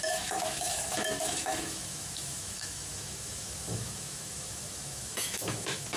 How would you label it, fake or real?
fake